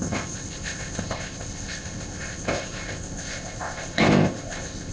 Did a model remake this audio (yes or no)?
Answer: yes